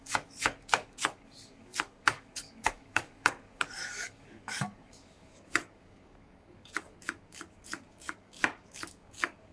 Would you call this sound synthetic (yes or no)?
yes